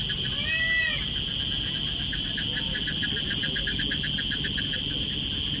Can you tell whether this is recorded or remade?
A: recorded